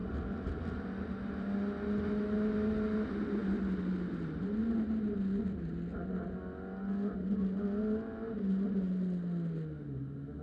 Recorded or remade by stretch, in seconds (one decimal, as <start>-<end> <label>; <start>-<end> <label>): 0.0-10.4 recorded